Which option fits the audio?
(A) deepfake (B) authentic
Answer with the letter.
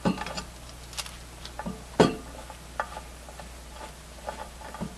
B